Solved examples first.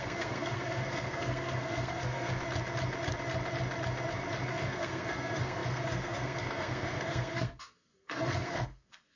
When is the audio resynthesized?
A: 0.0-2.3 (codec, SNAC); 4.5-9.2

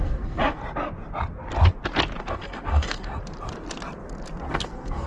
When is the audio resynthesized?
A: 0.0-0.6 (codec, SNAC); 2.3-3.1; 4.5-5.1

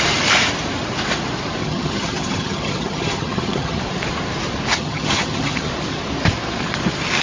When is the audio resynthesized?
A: 1.6-3.8 (vocoder, HiFi-GAN); 4.7-5.7

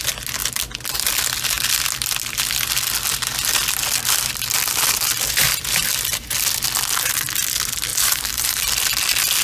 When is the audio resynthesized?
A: 7.9-8.6 (vocoder, BigVGAN v2)

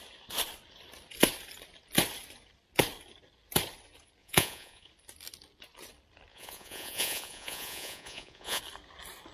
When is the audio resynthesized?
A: 4.2-4.9 (vocoder, Vocos); 6.3-8.6

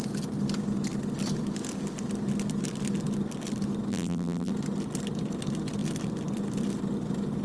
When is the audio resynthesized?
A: 3.9-4.5 (vocoder, BigVGAN v2)

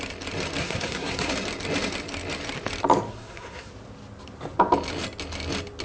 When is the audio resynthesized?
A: 0.6-1.3 (codec, SNAC); 3.1-3.7